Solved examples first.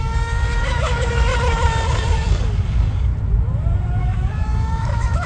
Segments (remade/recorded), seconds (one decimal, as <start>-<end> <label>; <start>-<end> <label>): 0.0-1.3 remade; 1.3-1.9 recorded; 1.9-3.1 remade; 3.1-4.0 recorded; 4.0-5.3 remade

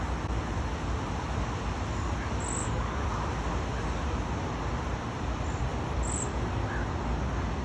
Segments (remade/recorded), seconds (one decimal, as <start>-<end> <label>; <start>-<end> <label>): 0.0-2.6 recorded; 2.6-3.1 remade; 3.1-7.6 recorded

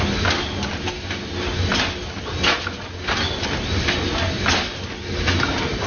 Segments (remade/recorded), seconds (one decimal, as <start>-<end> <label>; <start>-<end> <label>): 0.0-5.9 recorded

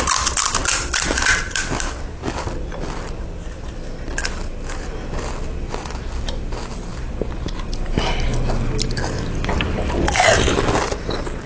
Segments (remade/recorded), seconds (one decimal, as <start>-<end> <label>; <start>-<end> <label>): 0.0-11.5 recorded

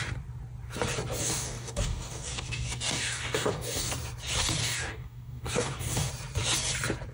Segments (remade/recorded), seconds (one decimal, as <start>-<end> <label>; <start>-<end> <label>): 0.0-1.2 recorded; 1.2-3.9 remade; 3.9-4.6 recorded; 4.6-6.1 remade; 6.1-7.1 recorded